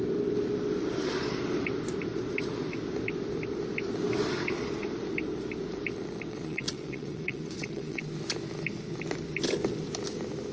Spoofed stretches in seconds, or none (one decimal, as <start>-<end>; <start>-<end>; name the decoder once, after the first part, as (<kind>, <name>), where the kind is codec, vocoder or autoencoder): 6.3-8.0 (vocoder, WaveNeXt)